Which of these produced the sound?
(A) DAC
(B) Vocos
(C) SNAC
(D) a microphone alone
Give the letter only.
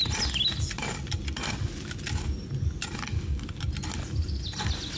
D